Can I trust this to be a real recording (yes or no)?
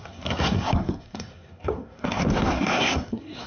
no